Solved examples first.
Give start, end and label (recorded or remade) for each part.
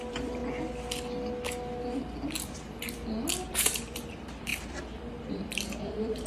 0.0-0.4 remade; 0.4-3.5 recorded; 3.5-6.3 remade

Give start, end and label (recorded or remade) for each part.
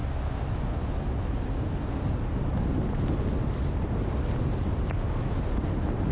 0.0-6.1 recorded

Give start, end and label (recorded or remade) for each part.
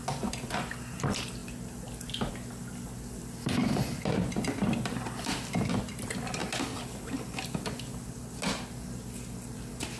0.0-10.0 recorded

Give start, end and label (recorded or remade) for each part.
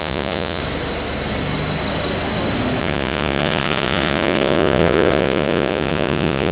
0.0-0.6 remade; 0.6-2.8 recorded; 2.8-6.5 remade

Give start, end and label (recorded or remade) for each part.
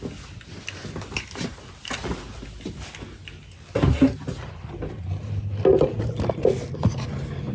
0.0-7.5 recorded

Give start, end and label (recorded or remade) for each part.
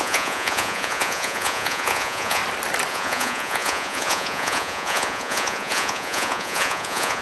0.0-2.4 remade; 2.4-2.9 recorded; 2.9-7.2 remade